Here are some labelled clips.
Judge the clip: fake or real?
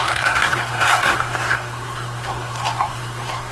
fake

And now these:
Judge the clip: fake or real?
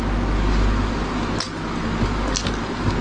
real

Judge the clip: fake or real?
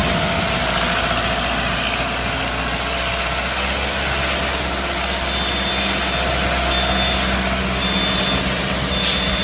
real